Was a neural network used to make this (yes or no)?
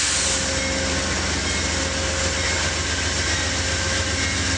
no